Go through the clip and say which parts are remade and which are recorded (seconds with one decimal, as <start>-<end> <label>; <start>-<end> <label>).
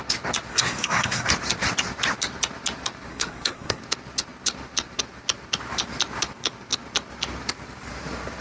0.0-0.5 recorded; 0.5-1.3 remade; 1.3-3.1 recorded; 3.1-3.8 remade; 3.8-8.4 recorded